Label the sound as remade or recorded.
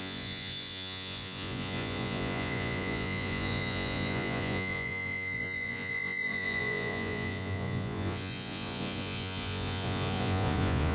remade